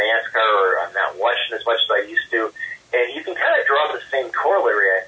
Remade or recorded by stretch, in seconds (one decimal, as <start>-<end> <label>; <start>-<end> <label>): 0.0-5.1 recorded